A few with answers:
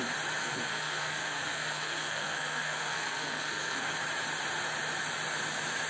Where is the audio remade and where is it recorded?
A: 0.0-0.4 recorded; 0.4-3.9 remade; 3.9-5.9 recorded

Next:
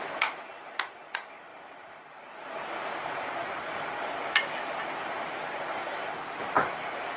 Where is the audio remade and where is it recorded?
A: 0.0-7.2 recorded

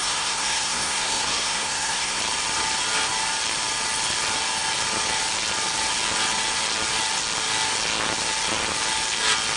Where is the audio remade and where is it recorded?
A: 0.0-2.2 remade; 2.2-9.6 recorded

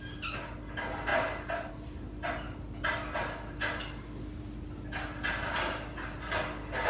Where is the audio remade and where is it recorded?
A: 0.0-6.9 recorded

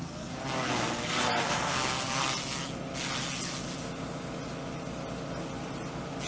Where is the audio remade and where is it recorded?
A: 0.0-0.4 remade; 0.4-1.4 recorded; 1.4-2.2 remade; 2.2-6.3 recorded

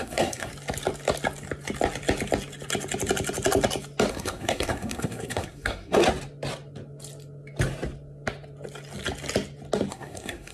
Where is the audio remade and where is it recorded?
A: 0.0-0.5 remade; 0.5-4.1 recorded; 4.1-6.0 remade; 6.0-9.9 recorded; 9.9-10.5 remade

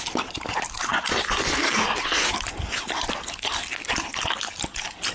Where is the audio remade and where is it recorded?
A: 0.0-5.1 recorded